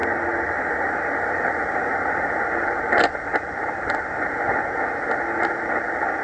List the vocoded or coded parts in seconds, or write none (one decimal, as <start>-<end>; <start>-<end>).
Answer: none